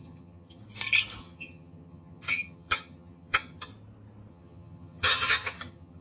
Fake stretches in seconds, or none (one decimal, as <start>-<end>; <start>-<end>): 0.0-0.6; 1.2-3.7; 4.3-6.0